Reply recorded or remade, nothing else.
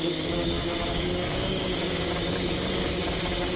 remade